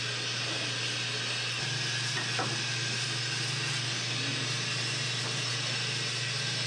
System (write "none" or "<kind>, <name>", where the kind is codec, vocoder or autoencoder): none